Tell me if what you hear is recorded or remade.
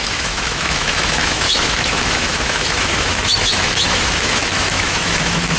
remade